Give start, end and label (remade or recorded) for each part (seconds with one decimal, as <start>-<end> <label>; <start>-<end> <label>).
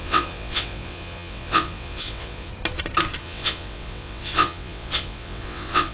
0.0-2.5 remade; 2.5-3.2 recorded; 3.2-5.9 remade